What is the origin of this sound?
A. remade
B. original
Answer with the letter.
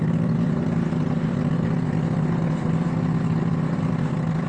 B